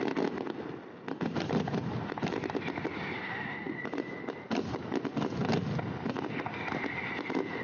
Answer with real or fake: real